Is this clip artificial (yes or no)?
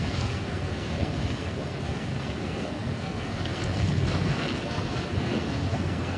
yes